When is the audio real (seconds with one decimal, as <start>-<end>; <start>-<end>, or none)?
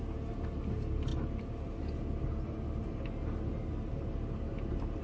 0.0-5.0